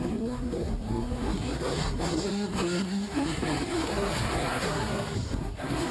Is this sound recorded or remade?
remade